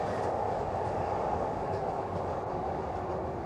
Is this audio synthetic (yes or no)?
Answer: yes